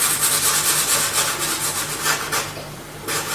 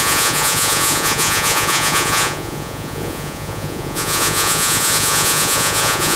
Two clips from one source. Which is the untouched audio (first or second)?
first